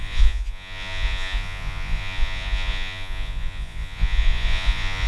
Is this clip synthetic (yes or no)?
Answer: yes